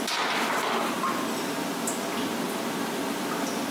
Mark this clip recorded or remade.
recorded